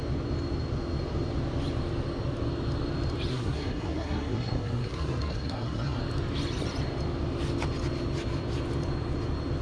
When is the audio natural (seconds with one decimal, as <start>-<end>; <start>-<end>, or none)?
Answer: 0.0-3.3; 6.0-9.6